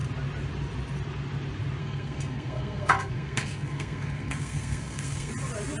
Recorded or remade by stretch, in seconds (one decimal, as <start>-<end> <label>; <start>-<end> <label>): 0.0-1.8 recorded; 1.8-5.3 remade; 5.3-5.8 recorded